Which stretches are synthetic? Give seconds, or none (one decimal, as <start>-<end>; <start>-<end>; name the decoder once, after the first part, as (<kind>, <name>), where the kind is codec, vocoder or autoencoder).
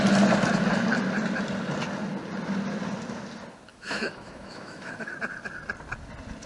3.7-5.1 (autoencoder, DAC-VAE)